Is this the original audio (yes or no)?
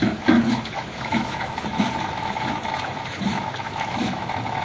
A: no